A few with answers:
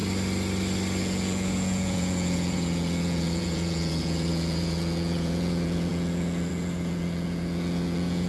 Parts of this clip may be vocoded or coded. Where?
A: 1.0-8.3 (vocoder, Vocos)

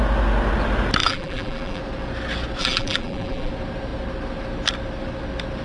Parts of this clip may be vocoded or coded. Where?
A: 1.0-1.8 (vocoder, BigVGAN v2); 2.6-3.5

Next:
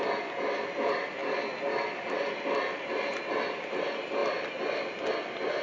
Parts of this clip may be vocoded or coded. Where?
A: none